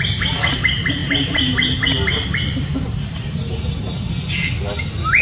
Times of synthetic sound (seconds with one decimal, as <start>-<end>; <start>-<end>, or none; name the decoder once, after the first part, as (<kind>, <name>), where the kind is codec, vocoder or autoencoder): none